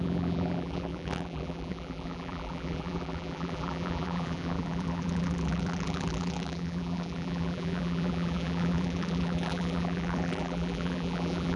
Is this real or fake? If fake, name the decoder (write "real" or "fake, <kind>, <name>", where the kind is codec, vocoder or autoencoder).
fake, vocoder, BigVGAN v2